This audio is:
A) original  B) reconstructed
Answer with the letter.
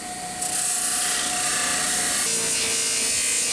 A